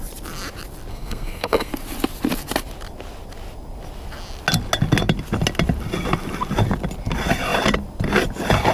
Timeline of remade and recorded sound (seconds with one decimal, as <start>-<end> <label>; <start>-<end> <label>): 0.0-0.9 recorded; 0.9-1.7 remade; 1.7-8.7 recorded